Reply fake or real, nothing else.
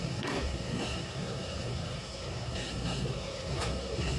fake